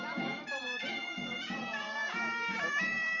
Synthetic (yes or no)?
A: yes